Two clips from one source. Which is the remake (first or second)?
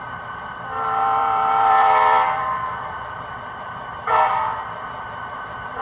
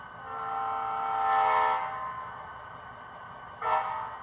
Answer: first